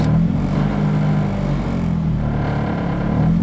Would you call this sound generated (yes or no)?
no